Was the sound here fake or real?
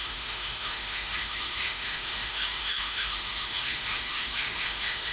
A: fake